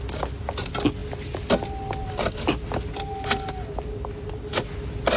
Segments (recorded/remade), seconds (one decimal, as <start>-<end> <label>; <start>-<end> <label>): 0.0-5.2 recorded